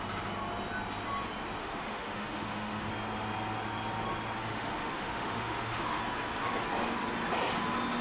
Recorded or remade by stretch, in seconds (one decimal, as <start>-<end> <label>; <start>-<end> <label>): 0.0-1.6 recorded; 1.6-2.9 remade; 2.9-4.4 recorded; 4.4-6.0 remade; 6.0-8.0 recorded